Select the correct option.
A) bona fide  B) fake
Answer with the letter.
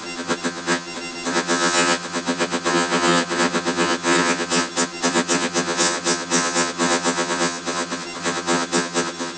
B